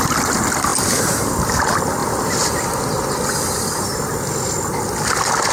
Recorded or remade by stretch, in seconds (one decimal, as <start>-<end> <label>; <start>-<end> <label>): 0.0-5.5 recorded